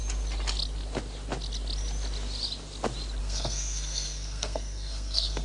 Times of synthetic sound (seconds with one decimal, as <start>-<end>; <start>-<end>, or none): 3.2-5.4